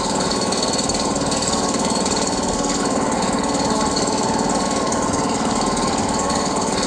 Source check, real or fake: fake